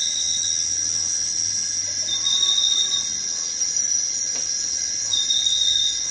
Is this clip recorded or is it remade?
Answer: recorded